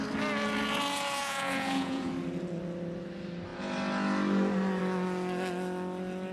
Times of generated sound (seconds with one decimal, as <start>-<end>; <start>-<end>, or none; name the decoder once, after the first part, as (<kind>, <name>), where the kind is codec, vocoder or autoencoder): 1.2-2.1 (vocoder, Vocos)